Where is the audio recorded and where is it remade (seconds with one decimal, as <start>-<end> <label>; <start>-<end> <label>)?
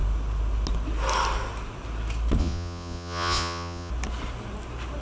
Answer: 0.0-2.4 recorded; 2.4-3.9 remade; 3.9-5.0 recorded